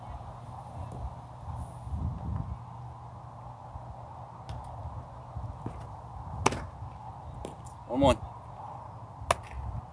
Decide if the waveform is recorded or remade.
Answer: recorded